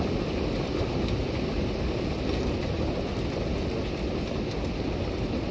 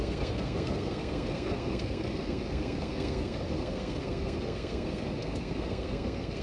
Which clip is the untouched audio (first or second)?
first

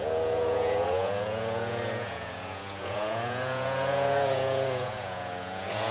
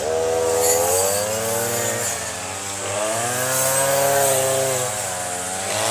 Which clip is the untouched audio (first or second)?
second